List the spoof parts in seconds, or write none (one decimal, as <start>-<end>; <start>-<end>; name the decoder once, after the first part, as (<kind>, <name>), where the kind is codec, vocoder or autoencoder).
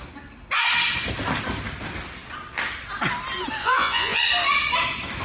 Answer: 3.6-4.2 (vocoder, Vocos)